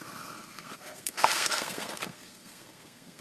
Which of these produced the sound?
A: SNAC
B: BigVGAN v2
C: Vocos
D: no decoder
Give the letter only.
A